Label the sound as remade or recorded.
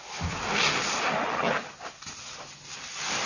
recorded